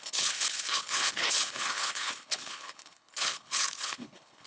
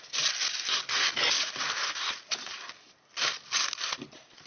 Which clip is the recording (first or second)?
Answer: second